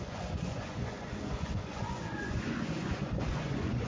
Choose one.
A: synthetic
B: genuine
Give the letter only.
A